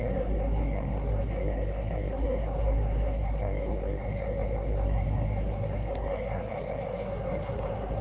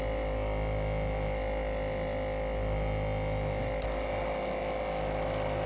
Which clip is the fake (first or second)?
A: first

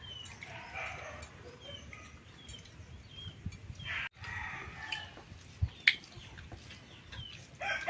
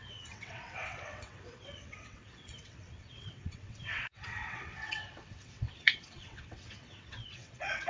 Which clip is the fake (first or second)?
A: second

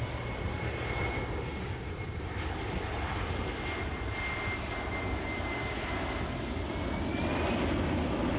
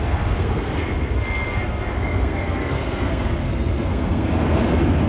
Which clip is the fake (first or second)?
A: second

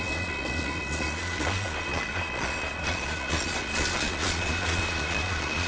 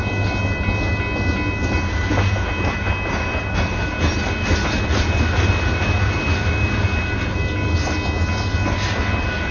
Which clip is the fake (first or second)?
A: first